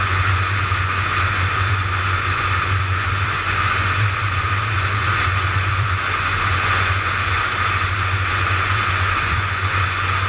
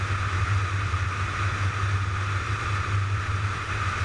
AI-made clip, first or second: first